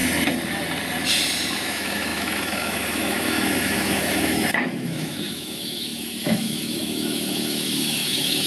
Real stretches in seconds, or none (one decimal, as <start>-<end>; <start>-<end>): 0.0-1.5